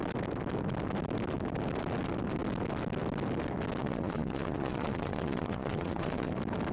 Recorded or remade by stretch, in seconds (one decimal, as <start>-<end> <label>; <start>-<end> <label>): 0.0-3.8 recorded; 3.8-6.3 remade; 6.3-6.7 recorded